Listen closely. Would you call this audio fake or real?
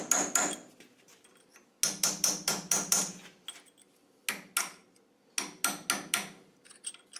real